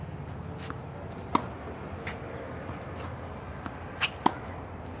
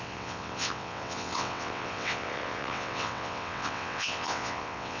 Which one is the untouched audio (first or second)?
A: first